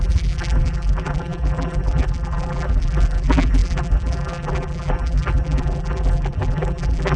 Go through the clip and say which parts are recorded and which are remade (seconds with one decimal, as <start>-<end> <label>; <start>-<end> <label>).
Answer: 0.0-7.2 remade